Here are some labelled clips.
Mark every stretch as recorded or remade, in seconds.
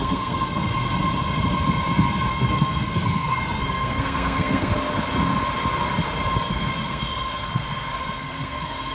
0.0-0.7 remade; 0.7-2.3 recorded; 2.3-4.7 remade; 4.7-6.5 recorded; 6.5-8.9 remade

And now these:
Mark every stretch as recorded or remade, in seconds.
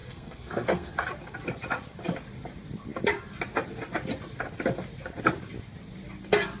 0.0-0.9 remade; 0.9-6.6 recorded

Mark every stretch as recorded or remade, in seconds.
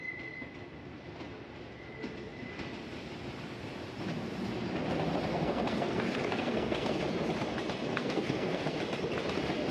0.0-5.3 recorded; 5.3-7.0 remade; 7.0-7.9 recorded; 7.9-8.8 remade; 8.8-9.7 recorded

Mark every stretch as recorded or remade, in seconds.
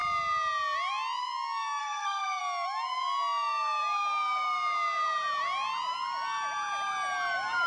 0.0-1.8 recorded; 1.8-2.4 remade; 2.4-7.7 recorded